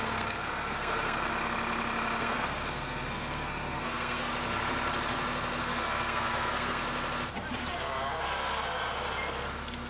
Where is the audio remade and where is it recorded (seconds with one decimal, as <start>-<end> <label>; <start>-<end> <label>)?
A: 0.0-1.3 remade; 1.3-2.2 recorded; 2.2-4.3 remade; 4.3-5.6 recorded; 5.6-6.8 remade; 6.8-9.9 recorded